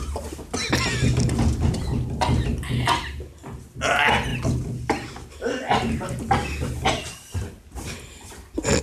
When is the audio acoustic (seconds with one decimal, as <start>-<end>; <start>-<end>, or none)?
0.0-8.8